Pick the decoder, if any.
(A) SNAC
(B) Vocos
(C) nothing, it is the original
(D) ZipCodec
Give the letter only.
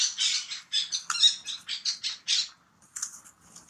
C